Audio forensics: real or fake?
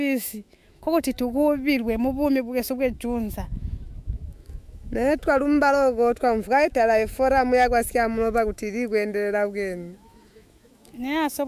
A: fake